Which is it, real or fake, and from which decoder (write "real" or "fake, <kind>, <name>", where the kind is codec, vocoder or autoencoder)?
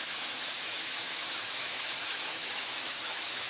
fake, autoencoder, DAC-VAE